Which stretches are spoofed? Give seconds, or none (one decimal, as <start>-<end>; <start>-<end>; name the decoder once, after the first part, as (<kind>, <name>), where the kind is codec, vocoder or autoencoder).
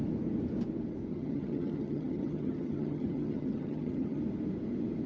1.1-4.2 (vocoder, HiFi-GAN)